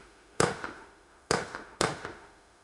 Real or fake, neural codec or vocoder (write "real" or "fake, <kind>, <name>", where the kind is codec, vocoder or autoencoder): fake, autoencoder, DAC-VAE